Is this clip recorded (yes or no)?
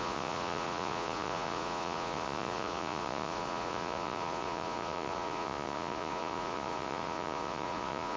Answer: no